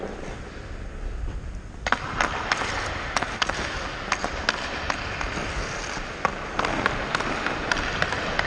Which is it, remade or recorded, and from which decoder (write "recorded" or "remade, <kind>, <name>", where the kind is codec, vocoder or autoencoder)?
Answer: recorded